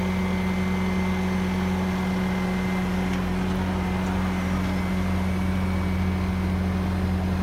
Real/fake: real